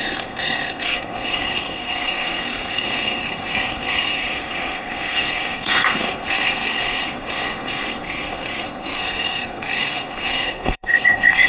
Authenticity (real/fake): fake